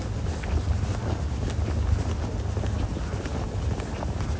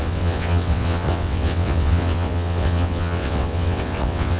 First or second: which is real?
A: first